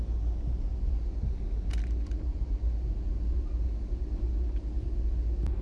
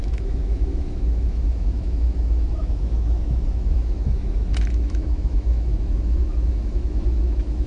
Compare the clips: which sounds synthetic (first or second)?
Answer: second